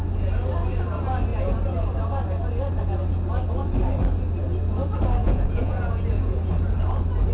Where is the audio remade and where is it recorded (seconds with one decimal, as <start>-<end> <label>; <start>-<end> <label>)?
0.0-5.2 recorded; 5.2-6.4 remade; 6.4-7.3 recorded